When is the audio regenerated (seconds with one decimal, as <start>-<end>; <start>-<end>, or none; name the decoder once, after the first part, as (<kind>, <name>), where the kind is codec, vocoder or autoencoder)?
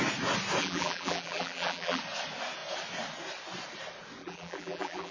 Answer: 0.6-2.0 (vocoder, BigVGAN v2); 4.2-5.1